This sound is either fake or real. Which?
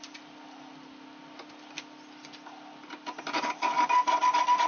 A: real